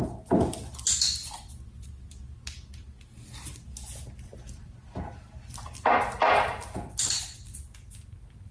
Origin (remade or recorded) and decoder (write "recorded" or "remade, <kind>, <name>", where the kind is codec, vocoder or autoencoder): recorded